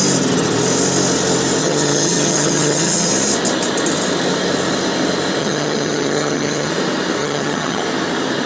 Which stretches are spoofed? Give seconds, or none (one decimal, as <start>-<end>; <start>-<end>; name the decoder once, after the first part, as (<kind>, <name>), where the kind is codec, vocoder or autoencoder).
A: 1.6-3.1 (vocoder, HiFi-GAN); 5.4-6.7; 7.2-7.8